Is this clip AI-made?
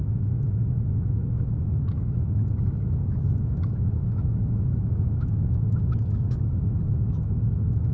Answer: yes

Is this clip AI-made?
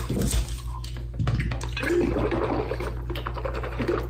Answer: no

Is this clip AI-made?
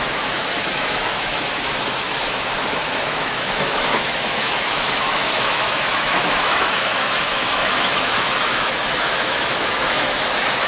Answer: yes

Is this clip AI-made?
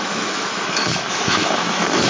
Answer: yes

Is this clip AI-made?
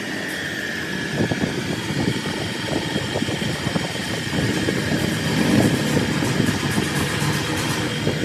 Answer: no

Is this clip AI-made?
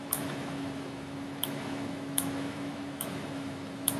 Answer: yes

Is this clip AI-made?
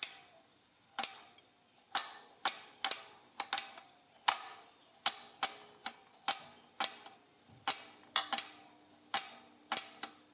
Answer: no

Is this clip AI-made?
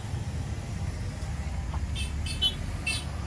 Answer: no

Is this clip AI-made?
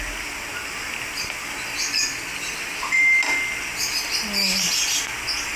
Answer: no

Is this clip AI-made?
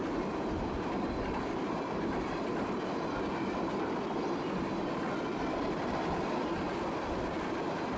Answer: no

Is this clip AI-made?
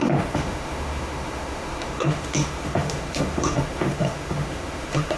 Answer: yes